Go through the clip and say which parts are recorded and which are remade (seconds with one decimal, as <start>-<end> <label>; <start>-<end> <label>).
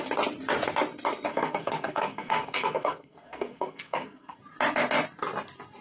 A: 0.0-1.3 recorded; 1.3-4.4 remade; 4.4-5.8 recorded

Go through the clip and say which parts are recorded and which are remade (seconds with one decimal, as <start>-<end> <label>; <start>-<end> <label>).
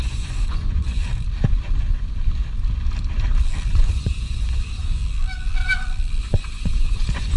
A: 0.0-1.1 remade; 1.1-3.7 recorded; 3.7-5.0 remade; 5.0-6.2 recorded; 6.2-7.4 remade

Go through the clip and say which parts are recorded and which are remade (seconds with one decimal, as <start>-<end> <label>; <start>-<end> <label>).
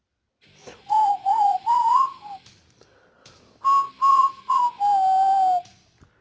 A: 0.0-0.6 recorded; 0.6-2.2 remade; 2.2-4.1 recorded; 4.1-4.6 remade; 4.6-6.2 recorded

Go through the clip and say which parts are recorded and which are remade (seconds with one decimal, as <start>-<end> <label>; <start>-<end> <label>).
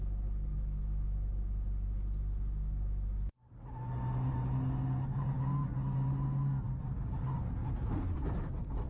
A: 0.0-7.6 recorded; 7.6-8.5 remade; 8.5-8.9 recorded